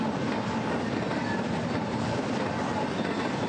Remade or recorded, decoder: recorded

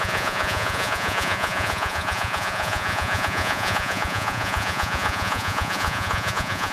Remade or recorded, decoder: remade, vocoder, Vocos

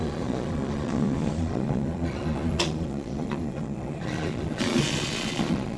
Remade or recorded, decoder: remade, vocoder, Vocos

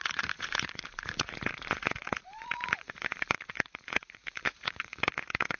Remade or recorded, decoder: remade, vocoder, Vocos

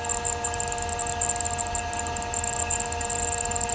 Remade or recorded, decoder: recorded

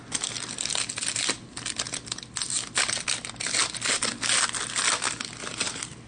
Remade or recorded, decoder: recorded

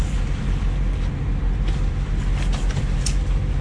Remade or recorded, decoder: recorded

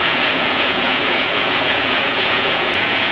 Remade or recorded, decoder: remade, vocoder, Vocos